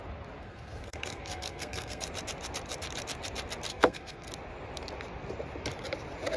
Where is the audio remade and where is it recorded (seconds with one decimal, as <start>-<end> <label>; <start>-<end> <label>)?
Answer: 0.0-0.4 recorded; 0.4-2.1 remade; 2.1-3.7 recorded; 3.7-4.3 remade; 4.3-6.4 recorded